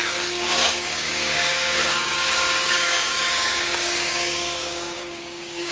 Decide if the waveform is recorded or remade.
remade